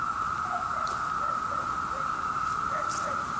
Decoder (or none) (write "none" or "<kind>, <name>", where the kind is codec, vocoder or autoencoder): none